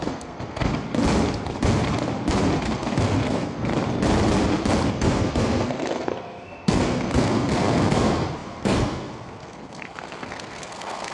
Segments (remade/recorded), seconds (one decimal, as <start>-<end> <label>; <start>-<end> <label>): 0.0-0.7 remade; 0.7-2.6 recorded; 2.6-3.7 remade; 3.7-4.9 recorded; 4.9-11.1 remade